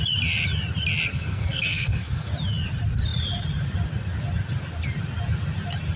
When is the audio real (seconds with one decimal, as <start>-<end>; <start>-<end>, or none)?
0.0-1.1; 2.3-6.0